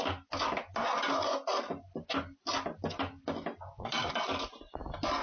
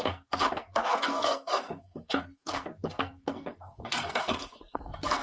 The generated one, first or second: second